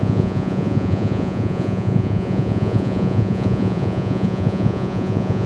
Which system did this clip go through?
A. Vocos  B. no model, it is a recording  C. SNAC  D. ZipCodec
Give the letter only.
A